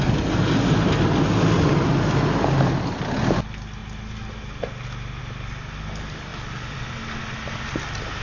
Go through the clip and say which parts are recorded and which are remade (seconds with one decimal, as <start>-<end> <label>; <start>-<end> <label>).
0.0-8.2 recorded